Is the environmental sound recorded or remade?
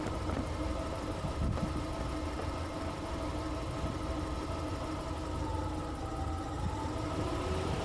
recorded